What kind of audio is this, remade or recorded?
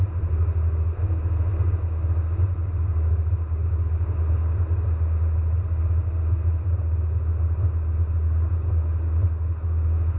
recorded